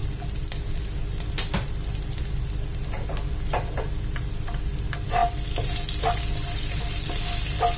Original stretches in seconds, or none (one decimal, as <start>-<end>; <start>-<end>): 0.0-7.8